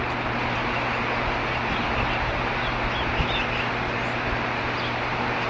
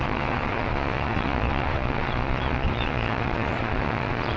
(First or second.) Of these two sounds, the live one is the first